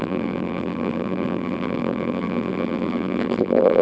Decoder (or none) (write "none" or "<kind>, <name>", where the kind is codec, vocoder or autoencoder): vocoder, BigVGAN v2